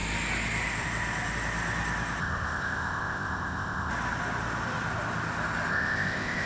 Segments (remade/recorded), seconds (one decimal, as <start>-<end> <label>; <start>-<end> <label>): 0.0-2.2 recorded; 2.2-3.9 remade; 3.9-5.7 recorded; 5.7-6.5 remade

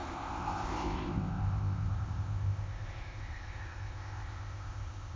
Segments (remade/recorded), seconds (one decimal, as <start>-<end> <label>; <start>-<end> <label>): 0.0-5.2 remade

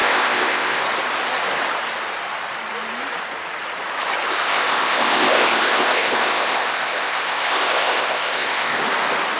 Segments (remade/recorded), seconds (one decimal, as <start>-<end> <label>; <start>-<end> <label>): 0.0-0.8 remade; 0.8-4.3 recorded; 4.3-8.8 remade; 8.8-9.4 recorded